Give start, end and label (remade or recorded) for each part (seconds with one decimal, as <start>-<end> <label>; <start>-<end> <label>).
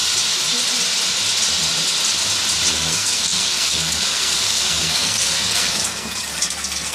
0.0-2.7 recorded; 2.7-6.9 remade